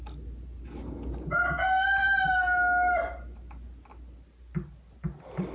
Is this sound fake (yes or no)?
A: no